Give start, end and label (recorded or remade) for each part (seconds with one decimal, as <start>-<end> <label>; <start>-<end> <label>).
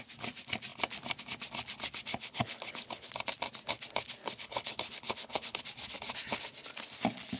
0.0-2.1 recorded; 2.1-3.1 remade; 3.1-4.2 recorded; 4.2-5.6 remade; 5.6-7.4 recorded